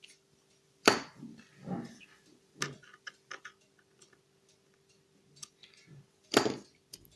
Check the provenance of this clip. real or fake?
real